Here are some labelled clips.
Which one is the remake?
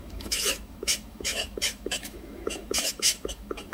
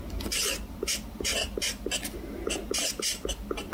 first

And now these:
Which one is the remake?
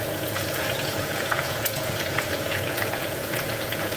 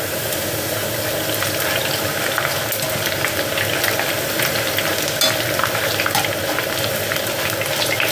first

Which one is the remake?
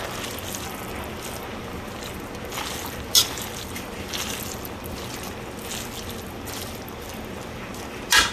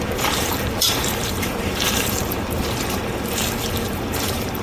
second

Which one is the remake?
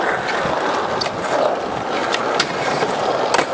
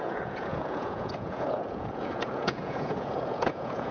second